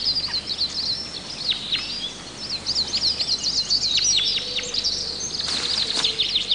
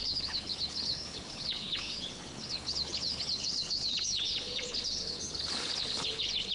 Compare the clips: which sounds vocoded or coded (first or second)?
second